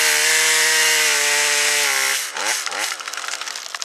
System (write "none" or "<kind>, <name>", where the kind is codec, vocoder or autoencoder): none